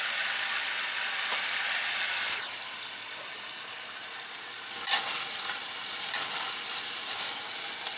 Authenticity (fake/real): real